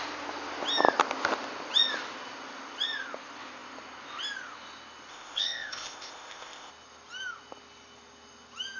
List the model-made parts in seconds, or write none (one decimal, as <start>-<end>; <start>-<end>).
5.1-6.7